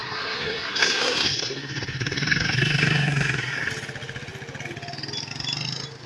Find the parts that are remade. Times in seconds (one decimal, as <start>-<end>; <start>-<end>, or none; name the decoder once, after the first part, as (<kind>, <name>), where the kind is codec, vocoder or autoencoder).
0.0-3.7 (codec, SNAC)